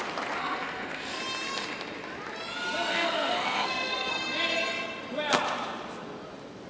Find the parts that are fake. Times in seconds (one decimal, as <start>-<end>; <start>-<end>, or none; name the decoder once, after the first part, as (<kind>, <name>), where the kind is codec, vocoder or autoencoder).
0.4-1.2 (codec, SNAC); 2.9-4.1

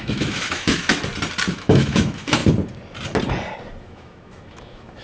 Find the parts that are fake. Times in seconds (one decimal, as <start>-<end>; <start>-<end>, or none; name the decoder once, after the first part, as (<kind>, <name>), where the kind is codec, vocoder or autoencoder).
0.0-0.9 (autoencoder, DAC-VAE); 1.5-2.4; 3.8-5.0

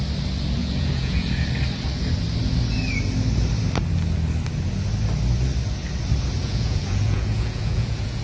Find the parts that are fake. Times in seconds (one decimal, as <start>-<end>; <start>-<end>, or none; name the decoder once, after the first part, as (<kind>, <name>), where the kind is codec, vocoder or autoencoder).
0.6-1.3 (vocoder, Vocos); 6.4-8.2

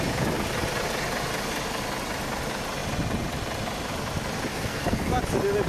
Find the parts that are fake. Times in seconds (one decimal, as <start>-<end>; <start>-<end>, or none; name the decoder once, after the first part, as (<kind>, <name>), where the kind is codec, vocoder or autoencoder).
4.5-5.1 (codec, SNAC)

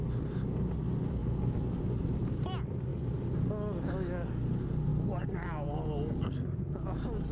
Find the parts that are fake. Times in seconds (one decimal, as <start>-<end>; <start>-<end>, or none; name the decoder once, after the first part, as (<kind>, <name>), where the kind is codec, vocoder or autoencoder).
none

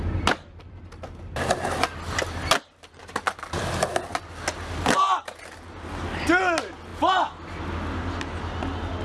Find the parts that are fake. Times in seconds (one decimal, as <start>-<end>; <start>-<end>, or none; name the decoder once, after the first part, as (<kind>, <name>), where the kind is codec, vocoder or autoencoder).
none

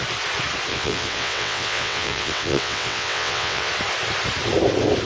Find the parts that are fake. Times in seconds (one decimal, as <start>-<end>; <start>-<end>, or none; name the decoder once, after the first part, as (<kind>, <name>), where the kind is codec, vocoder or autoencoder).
0.7-3.7 (vocoder, WaveNeXt)